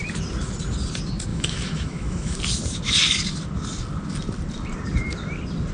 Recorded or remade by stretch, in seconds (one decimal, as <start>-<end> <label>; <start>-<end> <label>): 0.0-1.3 recorded; 1.3-2.4 remade; 2.4-5.7 recorded